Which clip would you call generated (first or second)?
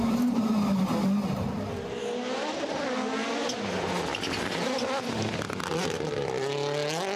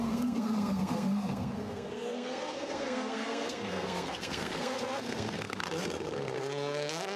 second